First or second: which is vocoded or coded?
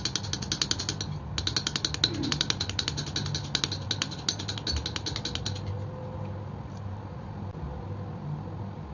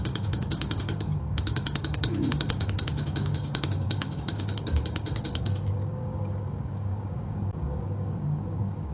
second